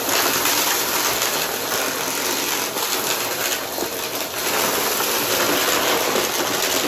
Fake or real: real